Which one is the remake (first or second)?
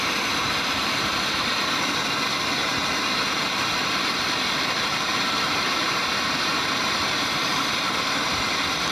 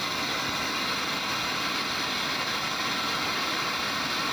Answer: first